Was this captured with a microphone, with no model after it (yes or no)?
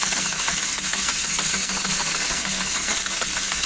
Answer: no